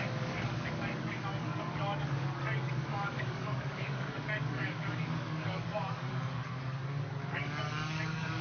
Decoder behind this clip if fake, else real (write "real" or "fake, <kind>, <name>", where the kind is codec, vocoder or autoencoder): fake, codec, DAC